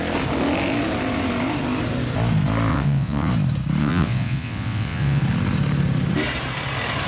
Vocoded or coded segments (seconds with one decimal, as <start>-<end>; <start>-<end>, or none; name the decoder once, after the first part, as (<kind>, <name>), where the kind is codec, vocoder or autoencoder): 2.7-3.3 (vocoder, WaveNeXt); 3.8-5.2